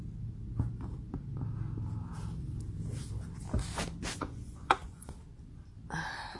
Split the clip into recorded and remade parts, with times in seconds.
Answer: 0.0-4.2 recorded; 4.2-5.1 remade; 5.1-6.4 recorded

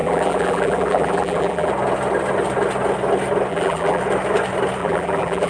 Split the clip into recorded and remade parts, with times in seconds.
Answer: 0.0-1.7 remade; 1.7-3.5 recorded; 3.5-4.0 remade; 4.0-4.8 recorded; 4.8-5.5 remade

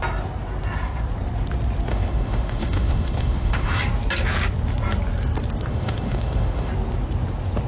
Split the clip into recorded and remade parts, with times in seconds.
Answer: 0.0-1.9 recorded; 1.9-3.8 remade; 3.8-5.7 recorded; 5.7-6.7 remade; 6.7-7.7 recorded

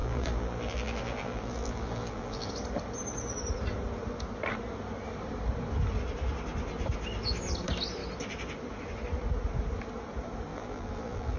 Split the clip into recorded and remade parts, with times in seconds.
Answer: 0.0-2.5 remade; 2.5-10.5 recorded; 10.5-11.4 remade